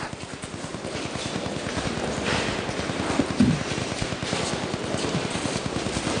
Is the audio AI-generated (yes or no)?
no